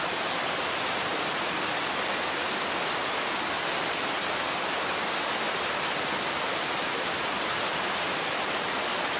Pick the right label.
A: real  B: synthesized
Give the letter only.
A